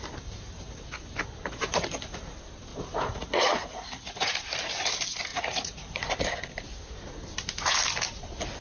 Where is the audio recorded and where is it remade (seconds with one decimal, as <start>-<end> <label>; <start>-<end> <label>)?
0.0-2.7 recorded; 2.7-4.3 remade; 4.3-5.3 recorded; 5.3-6.1 remade; 6.1-8.6 recorded